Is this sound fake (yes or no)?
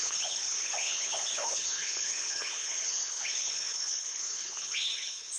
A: yes